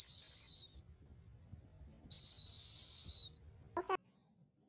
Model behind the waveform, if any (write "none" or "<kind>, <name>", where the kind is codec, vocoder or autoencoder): none